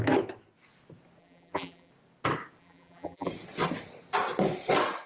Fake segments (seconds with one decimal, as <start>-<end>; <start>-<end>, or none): 1.2-1.9; 2.6-3.3